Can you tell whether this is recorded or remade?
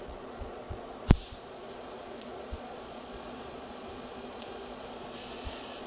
remade